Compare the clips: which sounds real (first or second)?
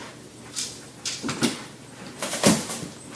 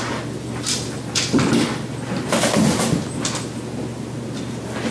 second